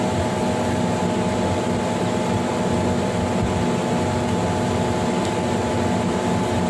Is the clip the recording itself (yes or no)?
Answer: yes